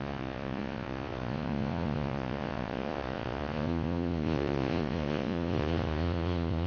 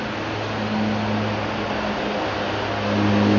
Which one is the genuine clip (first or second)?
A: second